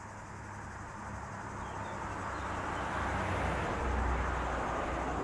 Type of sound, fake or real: real